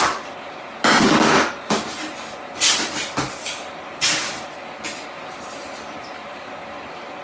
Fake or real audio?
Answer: real